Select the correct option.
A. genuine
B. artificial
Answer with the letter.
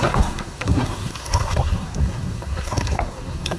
B